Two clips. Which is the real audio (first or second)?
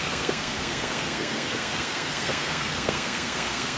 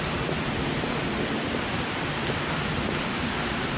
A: second